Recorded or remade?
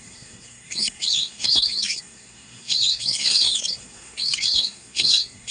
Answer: remade